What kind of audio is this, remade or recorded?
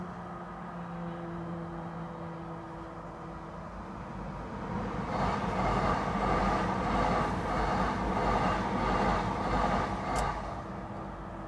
recorded